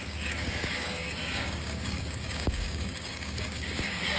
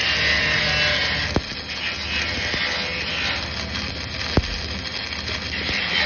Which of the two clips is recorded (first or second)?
second